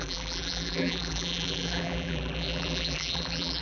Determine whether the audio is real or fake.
fake